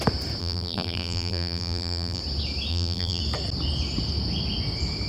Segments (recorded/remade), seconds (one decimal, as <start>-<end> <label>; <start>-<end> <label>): 0.0-0.4 recorded; 0.4-2.2 remade; 2.2-2.7 recorded; 2.7-3.2 remade; 3.2-5.1 recorded